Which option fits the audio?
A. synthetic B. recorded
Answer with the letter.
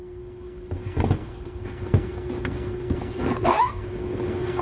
A